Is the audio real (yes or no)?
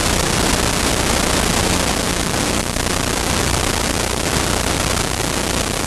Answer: yes